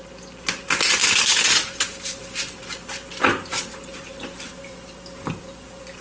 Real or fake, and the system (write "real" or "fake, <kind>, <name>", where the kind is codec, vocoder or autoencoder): real